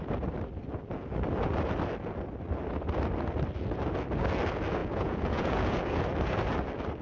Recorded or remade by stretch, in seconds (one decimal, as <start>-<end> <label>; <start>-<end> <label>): 0.0-4.8 recorded; 4.8-5.8 remade; 5.8-7.0 recorded

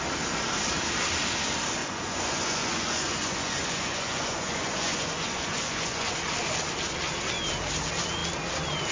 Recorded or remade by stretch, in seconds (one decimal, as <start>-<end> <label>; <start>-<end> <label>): 0.0-1.8 recorded; 1.8-6.1 remade; 6.1-8.9 recorded